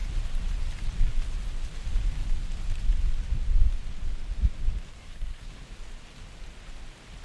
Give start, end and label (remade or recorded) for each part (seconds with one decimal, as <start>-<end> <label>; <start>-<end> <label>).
0.0-4.9 recorded; 4.9-5.5 remade; 5.5-7.2 recorded